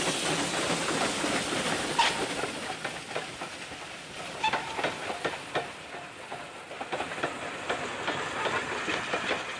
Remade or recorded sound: recorded